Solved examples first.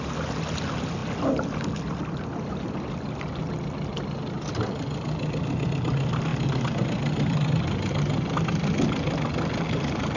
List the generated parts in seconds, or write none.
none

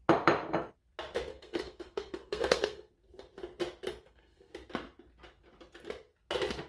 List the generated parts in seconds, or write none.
1.3-2.9 (codec, SNAC); 3.9-4.5

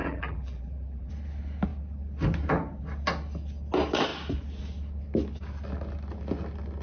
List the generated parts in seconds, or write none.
0.0-1.1 (vocoder, BigVGAN v2)